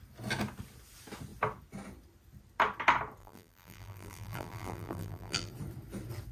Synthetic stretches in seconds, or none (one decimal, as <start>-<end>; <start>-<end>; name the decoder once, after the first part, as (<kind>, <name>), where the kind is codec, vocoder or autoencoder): 3.2-5.5 (vocoder, BigVGAN v2)